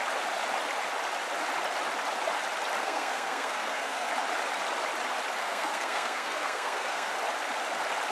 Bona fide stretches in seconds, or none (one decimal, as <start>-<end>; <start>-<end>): 0.0-2.8; 4.1-5.4; 7.1-8.1